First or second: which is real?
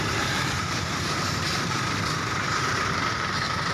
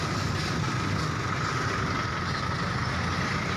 second